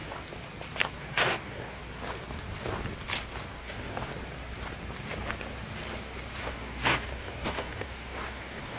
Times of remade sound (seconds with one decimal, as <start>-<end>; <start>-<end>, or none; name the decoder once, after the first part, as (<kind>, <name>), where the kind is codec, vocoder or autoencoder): 1.0-1.8 (codec, DAC); 3.5-4.1; 6.4-8.8